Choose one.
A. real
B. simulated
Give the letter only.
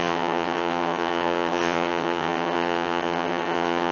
B